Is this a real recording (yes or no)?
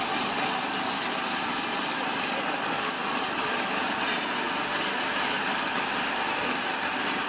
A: yes